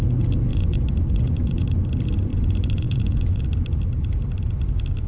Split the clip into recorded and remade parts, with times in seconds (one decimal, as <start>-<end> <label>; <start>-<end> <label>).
0.0-0.5 recorded; 0.5-1.8 remade; 1.8-2.3 recorded; 2.3-3.4 remade; 3.4-5.1 recorded